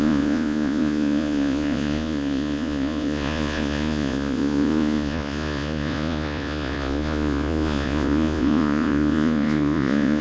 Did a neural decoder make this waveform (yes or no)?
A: yes